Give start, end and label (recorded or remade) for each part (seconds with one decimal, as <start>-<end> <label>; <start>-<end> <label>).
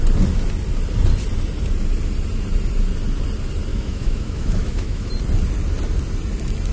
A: 0.0-3.7 recorded; 3.7-5.1 remade; 5.1-6.7 recorded